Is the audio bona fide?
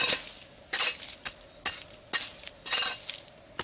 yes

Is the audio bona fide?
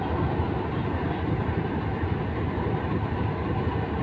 yes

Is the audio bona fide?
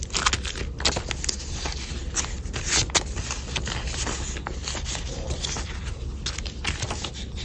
yes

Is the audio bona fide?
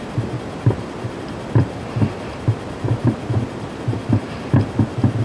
yes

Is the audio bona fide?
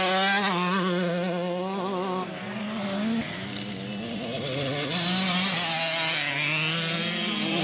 yes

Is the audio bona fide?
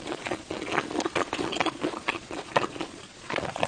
no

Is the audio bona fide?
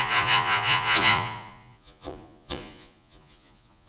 no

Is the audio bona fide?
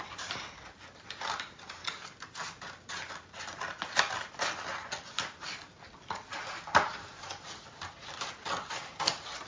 yes